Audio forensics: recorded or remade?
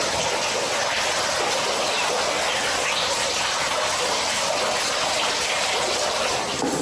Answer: recorded